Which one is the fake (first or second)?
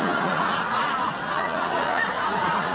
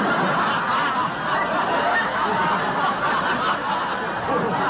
first